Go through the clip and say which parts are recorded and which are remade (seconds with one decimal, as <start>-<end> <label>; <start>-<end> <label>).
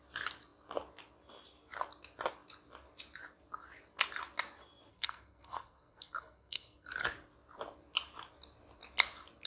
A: 0.0-4.9 recorded; 4.9-6.9 remade; 6.9-9.5 recorded